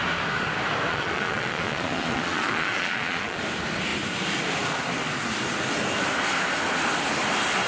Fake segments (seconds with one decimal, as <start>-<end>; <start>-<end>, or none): 0.9-3.4